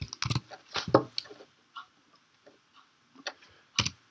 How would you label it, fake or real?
real